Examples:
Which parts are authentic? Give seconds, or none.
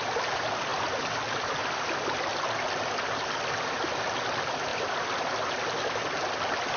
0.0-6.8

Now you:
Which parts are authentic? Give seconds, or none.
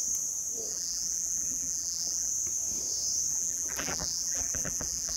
0.0-0.7; 2.3-3.3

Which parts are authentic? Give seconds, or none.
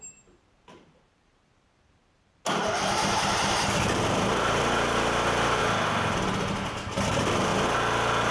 1.3-2.6; 5.6-7.0; 7.5-8.3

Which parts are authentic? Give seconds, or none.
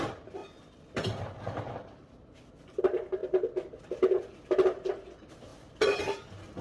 0.0-0.4; 2.8-3.2; 3.8-5.5; 6.0-6.6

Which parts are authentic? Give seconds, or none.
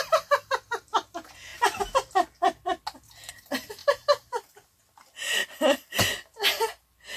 0.0-3.8; 4.8-7.2